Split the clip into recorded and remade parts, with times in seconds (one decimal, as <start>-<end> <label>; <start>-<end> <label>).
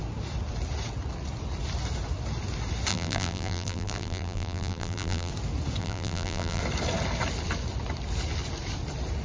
0.0-2.9 recorded; 2.9-5.3 remade; 5.3-5.8 recorded; 5.8-6.6 remade; 6.6-9.2 recorded